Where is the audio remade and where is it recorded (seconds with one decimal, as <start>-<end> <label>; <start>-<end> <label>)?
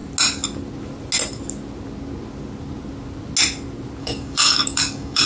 0.0-4.0 recorded; 4.0-5.3 remade